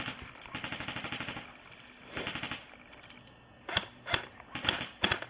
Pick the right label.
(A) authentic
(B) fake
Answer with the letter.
A